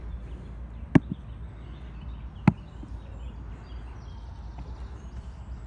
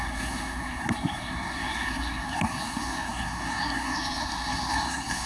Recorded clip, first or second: first